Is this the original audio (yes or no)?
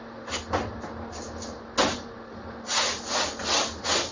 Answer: yes